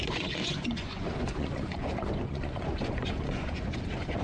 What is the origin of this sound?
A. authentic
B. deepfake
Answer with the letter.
B